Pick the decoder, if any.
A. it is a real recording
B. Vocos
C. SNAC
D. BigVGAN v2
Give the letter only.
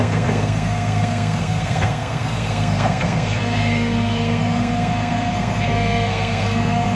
C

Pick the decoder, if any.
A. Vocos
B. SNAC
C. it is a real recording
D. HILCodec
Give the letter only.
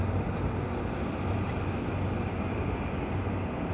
C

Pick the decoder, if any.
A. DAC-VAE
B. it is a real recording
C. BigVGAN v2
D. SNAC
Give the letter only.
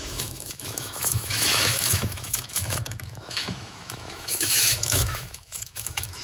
A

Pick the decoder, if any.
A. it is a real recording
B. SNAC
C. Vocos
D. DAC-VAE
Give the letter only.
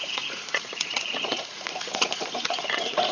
C